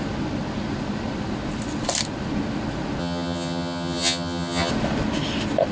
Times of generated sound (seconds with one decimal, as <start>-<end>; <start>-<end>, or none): 3.0-4.7